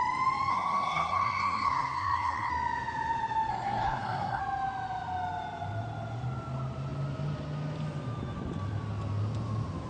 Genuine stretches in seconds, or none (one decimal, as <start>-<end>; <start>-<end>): 0.0-0.5; 2.5-3.5; 4.4-9.9